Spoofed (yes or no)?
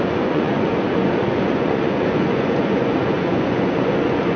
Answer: yes